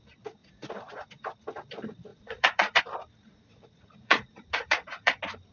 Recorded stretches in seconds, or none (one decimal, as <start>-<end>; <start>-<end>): 0.0-0.4; 1.0-2.1; 2.8-3.3; 5.1-5.5